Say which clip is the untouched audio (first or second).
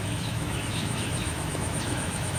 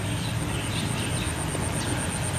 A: second